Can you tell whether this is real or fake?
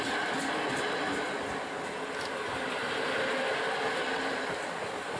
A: real